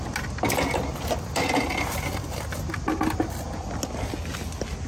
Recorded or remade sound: recorded